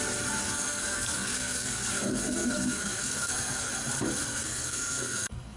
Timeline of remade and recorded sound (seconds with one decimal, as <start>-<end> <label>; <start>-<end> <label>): 0.0-0.4 recorded; 0.4-3.7 remade; 3.7-4.3 recorded; 4.3-5.6 remade